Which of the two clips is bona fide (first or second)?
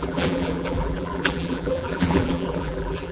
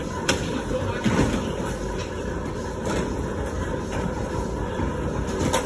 second